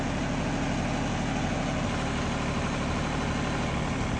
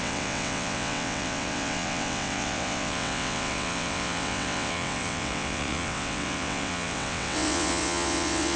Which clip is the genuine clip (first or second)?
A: first